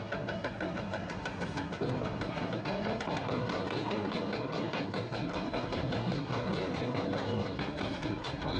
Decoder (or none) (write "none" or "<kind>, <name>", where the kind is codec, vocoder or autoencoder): codec, SNAC